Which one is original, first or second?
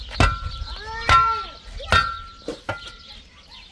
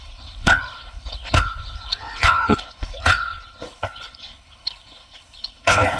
first